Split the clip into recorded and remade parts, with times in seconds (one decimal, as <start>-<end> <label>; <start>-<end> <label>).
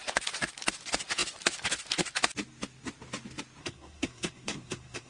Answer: 0.0-3.6 recorded; 3.6-5.1 remade